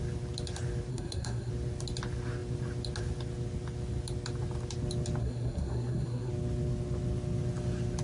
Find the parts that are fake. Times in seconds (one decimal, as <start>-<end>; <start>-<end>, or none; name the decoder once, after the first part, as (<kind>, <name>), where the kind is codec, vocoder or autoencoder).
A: 0.9-1.5 (codec, SNAC); 5.2-6.3